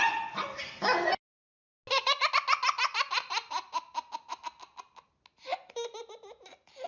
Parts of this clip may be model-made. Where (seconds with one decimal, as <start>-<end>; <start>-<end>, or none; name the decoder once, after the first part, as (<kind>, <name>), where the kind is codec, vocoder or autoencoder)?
none